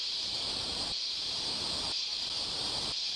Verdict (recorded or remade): recorded